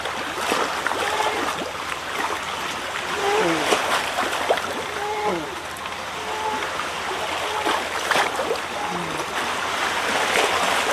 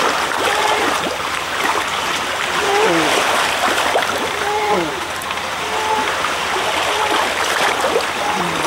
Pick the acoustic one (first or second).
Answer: first